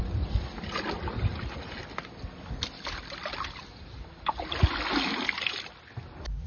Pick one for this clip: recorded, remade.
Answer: recorded